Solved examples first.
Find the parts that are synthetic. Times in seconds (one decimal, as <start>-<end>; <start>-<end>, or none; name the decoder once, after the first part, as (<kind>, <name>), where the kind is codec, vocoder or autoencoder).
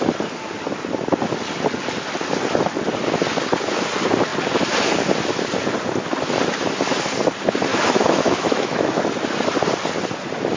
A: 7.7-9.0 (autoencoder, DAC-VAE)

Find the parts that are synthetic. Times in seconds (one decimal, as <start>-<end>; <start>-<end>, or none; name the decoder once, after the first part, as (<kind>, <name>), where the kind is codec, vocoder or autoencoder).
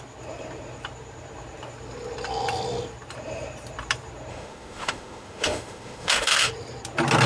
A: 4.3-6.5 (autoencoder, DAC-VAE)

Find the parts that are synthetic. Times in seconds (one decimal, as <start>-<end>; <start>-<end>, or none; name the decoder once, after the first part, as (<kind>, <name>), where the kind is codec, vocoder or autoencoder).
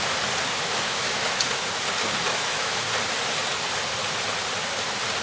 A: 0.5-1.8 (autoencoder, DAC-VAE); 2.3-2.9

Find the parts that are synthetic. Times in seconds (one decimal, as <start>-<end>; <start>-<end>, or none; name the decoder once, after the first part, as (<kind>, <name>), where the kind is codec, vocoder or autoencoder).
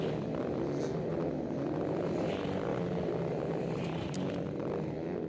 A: none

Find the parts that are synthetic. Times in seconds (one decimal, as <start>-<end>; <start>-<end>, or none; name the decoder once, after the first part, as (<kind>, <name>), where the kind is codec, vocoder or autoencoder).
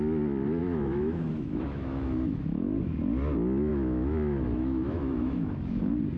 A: 0.6-2.8 (autoencoder, DAC-VAE); 3.7-5.8